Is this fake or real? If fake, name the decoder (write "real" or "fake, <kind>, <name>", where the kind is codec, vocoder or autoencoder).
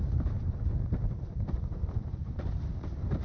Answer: real